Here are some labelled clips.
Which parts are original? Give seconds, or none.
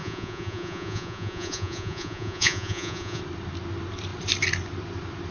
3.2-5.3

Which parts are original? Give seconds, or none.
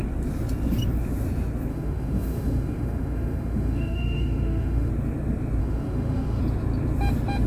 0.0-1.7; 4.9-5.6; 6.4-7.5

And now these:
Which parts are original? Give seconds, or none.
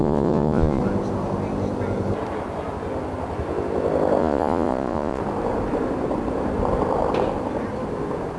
0.8-4.2; 5.2-8.4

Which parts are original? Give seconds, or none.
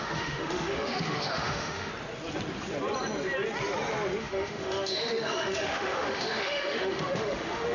1.9-4.2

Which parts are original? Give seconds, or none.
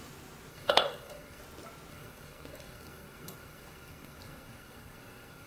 0.0-0.5; 1.4-1.9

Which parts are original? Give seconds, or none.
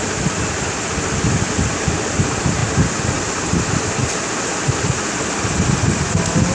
0.0-6.5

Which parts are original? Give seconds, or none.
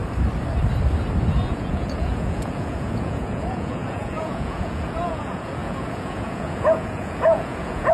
0.0-1.4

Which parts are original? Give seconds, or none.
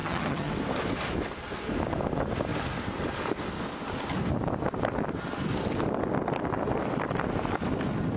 0.5-8.2